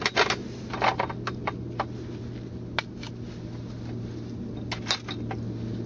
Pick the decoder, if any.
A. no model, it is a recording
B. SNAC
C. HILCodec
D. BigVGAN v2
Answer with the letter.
A